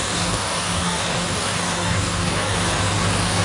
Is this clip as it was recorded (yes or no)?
no